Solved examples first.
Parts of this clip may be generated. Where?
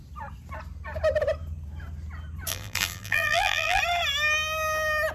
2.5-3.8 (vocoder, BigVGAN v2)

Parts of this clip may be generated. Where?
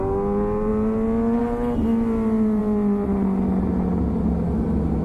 none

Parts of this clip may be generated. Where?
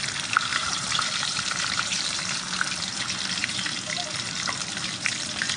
0.5-2.0 (vocoder, BigVGAN v2); 3.4-4.0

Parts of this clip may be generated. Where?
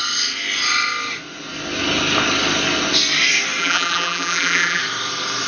3.6-4.8 (vocoder, BigVGAN v2)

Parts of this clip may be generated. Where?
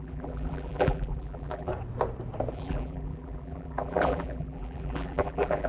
0.0-1.7 (vocoder, BigVGAN v2); 2.5-5.7